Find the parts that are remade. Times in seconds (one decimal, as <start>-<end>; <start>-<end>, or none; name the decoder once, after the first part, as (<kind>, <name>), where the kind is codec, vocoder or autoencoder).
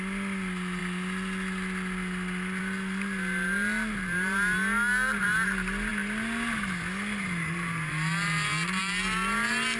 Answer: none